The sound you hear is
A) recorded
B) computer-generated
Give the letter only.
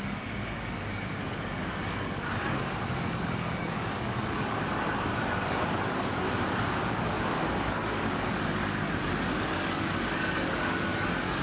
B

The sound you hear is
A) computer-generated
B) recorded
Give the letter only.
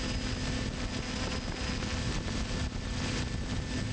B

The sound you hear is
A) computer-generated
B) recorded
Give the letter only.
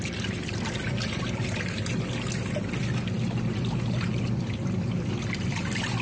B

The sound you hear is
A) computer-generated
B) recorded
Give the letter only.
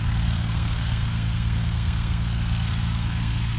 A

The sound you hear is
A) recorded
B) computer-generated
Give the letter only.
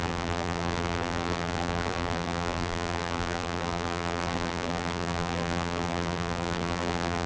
B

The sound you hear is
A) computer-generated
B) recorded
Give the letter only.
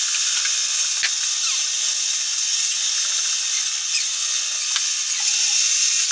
B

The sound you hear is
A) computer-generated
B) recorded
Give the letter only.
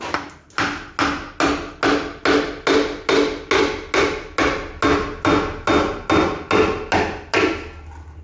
B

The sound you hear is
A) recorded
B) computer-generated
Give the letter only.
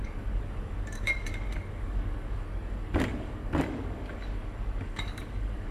B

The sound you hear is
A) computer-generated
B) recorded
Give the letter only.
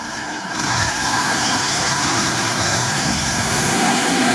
A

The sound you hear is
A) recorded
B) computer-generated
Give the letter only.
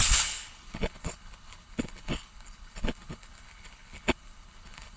B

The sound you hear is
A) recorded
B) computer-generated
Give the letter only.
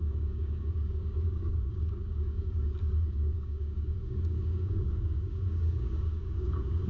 B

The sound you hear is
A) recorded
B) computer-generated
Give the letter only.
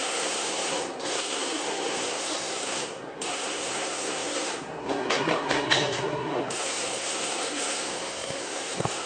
B